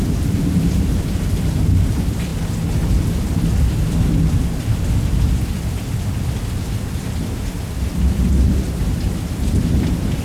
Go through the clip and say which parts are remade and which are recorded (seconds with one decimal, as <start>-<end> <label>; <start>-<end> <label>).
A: 0.0-2.3 remade; 2.3-7.2 recorded; 7.2-10.2 remade